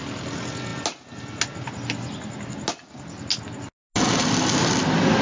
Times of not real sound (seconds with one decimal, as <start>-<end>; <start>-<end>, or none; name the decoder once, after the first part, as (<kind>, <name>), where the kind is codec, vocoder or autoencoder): none